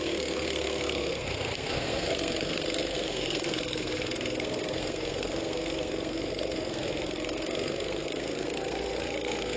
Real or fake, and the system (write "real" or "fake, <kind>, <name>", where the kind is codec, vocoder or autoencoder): fake, codec, SNAC